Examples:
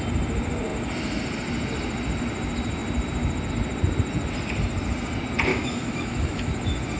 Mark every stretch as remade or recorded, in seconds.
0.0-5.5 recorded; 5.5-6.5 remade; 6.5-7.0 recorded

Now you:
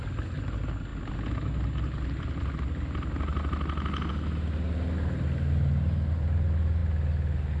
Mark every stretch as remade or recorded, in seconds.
0.0-7.6 recorded

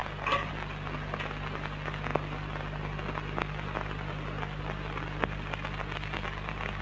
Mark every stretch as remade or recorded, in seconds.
0.0-6.8 recorded

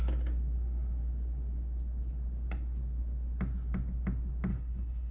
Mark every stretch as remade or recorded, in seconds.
0.0-4.5 recorded; 4.5-5.1 remade

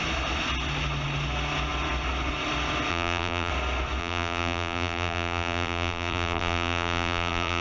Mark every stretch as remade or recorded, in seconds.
0.0-2.9 recorded; 2.9-3.5 remade; 3.5-4.0 recorded; 4.0-7.6 remade

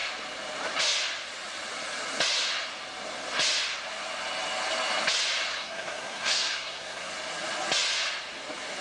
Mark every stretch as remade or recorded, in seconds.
0.0-5.5 recorded; 5.5-7.1 remade; 7.1-8.8 recorded